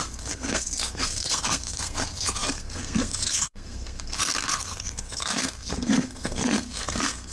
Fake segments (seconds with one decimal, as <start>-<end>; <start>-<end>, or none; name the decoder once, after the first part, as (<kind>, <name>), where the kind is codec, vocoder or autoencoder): 0.0-7.3 (codec, SNAC)